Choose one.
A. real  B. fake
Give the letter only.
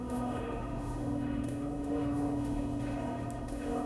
B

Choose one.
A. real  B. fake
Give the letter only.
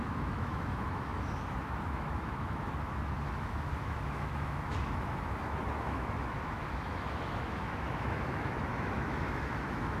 B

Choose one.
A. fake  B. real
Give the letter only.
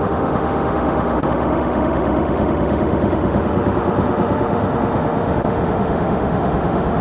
A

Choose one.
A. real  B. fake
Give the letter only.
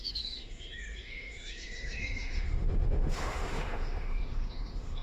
B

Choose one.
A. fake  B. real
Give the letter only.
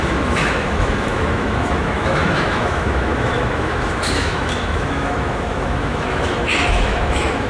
A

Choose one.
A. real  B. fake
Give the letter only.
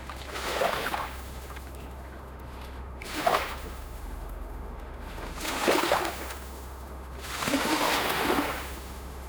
B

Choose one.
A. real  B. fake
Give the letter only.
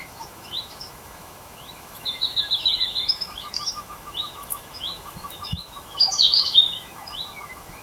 B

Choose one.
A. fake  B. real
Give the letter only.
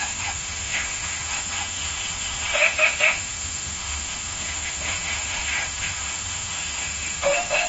A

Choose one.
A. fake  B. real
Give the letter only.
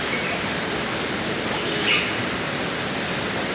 B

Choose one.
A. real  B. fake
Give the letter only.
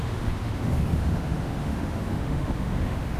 B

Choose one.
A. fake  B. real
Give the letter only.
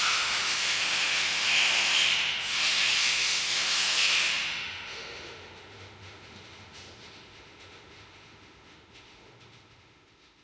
A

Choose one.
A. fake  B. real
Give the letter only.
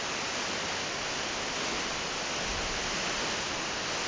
B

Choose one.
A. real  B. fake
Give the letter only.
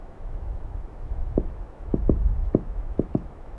B